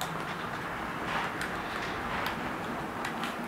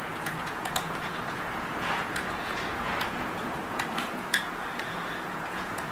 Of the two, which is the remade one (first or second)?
second